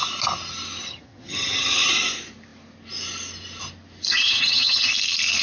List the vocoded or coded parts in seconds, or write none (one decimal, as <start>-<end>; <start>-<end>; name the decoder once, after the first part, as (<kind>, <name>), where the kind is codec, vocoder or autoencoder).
0.8-1.9 (vocoder, HiFi-GAN); 4.1-4.9